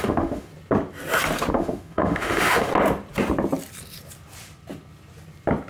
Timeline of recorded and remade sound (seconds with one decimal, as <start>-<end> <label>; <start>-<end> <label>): 0.0-0.5 remade; 0.5-1.5 recorded; 1.5-2.7 remade; 2.7-5.7 recorded